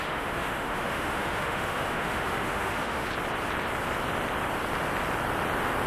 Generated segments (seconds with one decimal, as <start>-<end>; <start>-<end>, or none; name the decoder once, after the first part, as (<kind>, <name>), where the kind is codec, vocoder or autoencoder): 0.0-3.1 (autoencoder, DAC-VAE)